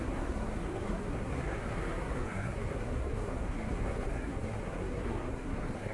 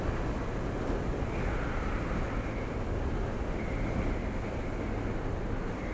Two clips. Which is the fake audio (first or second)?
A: first